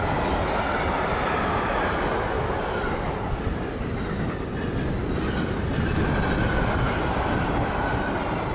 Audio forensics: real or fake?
real